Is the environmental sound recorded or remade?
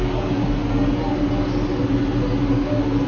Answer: recorded